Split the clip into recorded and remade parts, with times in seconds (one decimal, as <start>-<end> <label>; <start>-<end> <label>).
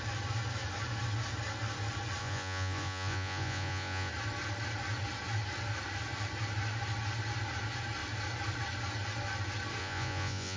0.0-2.2 recorded; 2.2-4.1 remade; 4.1-9.8 recorded; 9.8-10.6 remade